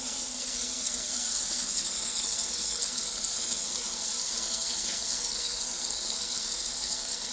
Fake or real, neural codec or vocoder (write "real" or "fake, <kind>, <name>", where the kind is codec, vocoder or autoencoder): fake, codec, SNAC